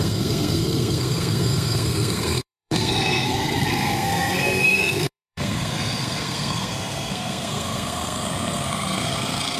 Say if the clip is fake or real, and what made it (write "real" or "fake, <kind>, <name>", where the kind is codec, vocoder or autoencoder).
fake, codec, SNAC